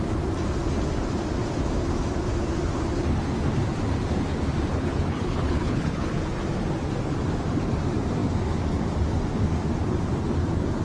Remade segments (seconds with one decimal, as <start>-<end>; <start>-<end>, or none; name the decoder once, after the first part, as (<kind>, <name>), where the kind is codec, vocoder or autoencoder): 4.7-6.2 (codec, HILCodec)